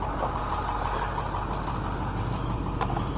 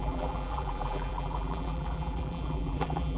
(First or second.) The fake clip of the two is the second